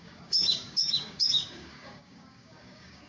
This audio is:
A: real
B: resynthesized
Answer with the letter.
B